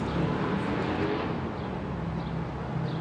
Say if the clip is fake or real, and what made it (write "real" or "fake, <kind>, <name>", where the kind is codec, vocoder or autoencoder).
real